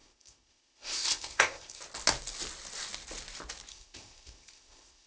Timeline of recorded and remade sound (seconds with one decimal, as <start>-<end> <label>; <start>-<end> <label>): 0.0-1.8 remade; 1.8-3.7 recorded; 3.7-5.1 remade